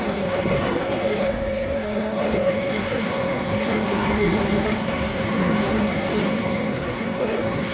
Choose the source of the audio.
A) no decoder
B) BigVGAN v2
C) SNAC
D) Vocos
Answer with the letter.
C